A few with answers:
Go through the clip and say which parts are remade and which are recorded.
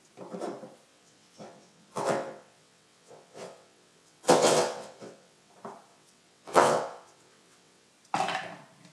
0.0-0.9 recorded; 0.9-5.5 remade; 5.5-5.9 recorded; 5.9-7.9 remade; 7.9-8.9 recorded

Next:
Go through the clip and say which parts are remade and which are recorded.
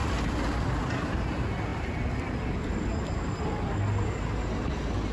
0.0-0.8 remade; 0.8-1.7 recorded; 1.7-3.1 remade; 3.1-5.1 recorded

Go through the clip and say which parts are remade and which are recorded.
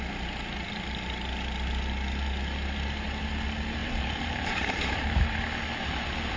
0.0-3.8 recorded; 3.8-5.4 remade; 5.4-6.4 recorded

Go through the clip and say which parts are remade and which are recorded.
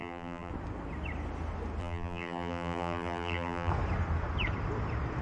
0.0-0.5 remade; 0.5-1.8 recorded; 1.8-3.7 remade; 3.7-5.2 recorded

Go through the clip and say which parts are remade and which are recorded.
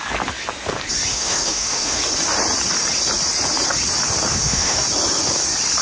0.0-1.1 recorded; 1.1-2.0 remade; 2.0-4.3 recorded; 4.3-4.8 remade; 4.8-5.8 recorded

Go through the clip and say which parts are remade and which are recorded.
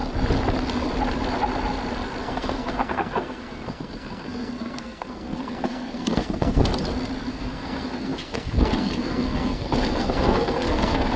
0.0-2.2 recorded; 2.2-6.7 remade; 6.7-7.3 recorded; 7.3-11.2 remade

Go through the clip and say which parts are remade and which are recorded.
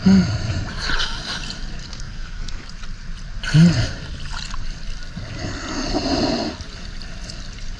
0.0-1.8 recorded; 1.8-2.7 remade; 2.7-7.8 recorded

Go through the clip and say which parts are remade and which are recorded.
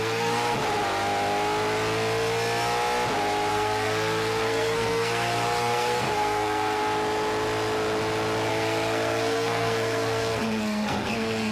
0.0-0.6 remade; 0.6-3.5 recorded; 3.5-6.8 remade; 6.8-8.5 recorded; 8.5-11.5 remade